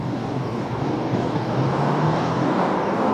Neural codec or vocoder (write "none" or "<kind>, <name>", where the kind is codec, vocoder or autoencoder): codec, DAC